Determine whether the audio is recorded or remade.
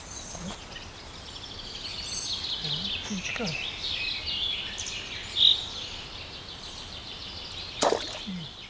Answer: recorded